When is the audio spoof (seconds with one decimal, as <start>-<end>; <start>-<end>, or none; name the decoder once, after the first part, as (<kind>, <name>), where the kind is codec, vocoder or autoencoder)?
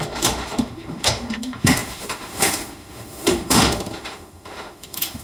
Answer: 0.0-5.2 (autoencoder, DAC-VAE)